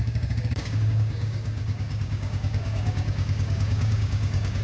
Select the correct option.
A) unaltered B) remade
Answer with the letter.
B